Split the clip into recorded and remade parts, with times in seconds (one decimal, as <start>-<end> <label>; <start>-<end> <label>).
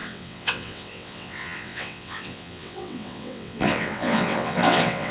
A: 0.0-5.1 remade